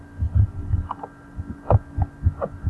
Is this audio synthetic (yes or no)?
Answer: no